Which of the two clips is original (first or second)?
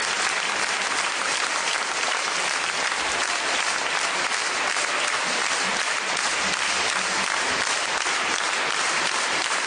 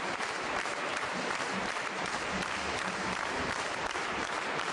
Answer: first